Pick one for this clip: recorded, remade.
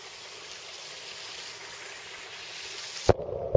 recorded